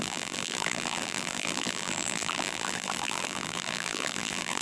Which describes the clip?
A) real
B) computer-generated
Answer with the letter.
B